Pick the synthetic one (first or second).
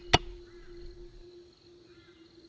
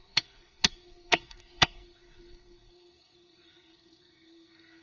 second